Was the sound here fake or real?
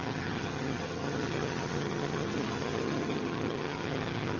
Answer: fake